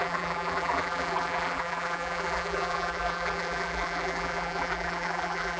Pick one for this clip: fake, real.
fake